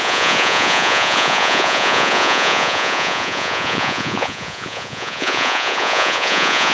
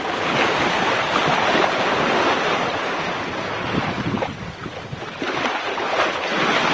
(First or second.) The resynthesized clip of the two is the first